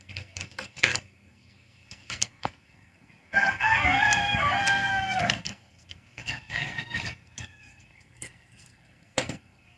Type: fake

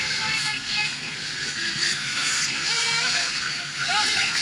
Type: fake